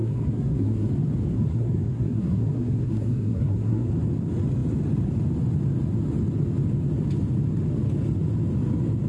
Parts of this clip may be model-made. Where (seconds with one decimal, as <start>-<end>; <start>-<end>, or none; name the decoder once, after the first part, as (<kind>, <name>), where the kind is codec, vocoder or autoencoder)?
0.0-0.9 (codec, SNAC); 1.3-3.9